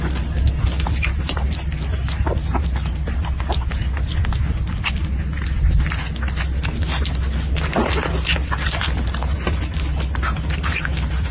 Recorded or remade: recorded